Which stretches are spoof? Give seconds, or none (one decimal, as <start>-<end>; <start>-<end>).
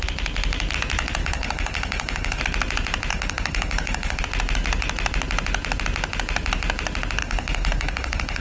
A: 1.2-2.4; 3.1-4.2; 7.2-8.4